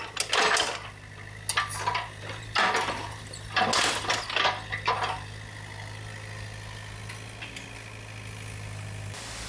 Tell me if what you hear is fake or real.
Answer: real